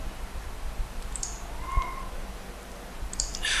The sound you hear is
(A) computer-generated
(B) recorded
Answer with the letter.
B